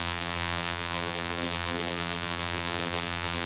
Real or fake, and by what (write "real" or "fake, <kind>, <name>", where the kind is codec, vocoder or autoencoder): fake, vocoder, BigVGAN v2